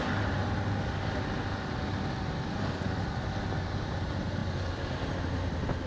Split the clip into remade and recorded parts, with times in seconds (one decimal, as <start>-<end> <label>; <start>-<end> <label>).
0.0-5.9 recorded